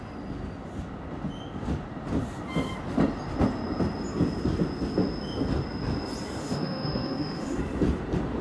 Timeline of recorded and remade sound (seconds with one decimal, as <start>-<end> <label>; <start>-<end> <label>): 0.0-6.4 recorded; 6.4-7.6 remade; 7.6-8.4 recorded